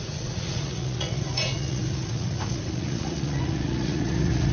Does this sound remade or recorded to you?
remade